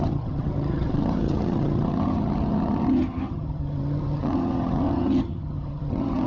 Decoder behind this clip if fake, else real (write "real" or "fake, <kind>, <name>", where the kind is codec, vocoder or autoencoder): fake, vocoder, HiFi-GAN